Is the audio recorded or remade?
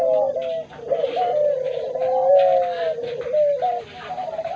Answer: recorded